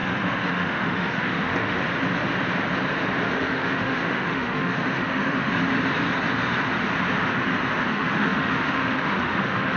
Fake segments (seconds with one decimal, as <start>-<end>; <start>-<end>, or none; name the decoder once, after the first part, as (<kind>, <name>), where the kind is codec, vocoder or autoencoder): 0.0-1.8 (autoencoder, DAC-VAE); 3.3-5.5; 7.9-9.8